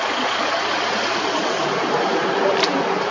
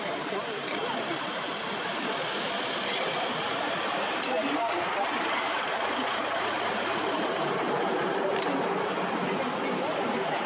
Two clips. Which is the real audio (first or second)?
first